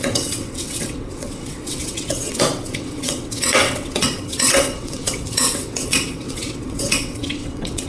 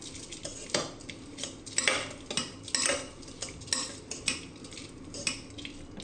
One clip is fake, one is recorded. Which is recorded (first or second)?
second